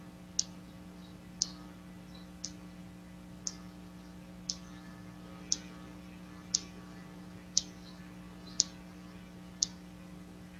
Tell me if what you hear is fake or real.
real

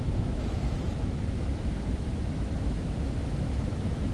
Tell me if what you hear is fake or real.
fake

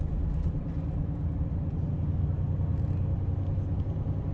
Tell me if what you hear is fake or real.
real